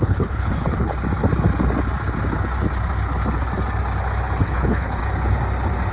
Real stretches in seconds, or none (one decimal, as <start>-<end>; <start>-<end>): 0.9-4.4; 5.0-5.9